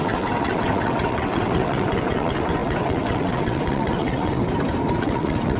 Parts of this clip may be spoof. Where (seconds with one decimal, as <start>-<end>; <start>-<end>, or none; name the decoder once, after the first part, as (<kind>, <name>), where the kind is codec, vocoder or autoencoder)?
0.0-4.4 (vocoder, WaveNeXt); 5.0-5.6